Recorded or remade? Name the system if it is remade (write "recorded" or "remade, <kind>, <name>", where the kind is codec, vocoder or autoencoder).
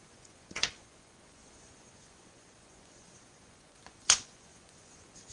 remade, vocoder, Vocos